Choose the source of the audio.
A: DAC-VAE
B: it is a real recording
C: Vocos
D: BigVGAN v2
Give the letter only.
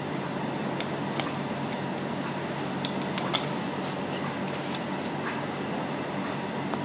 B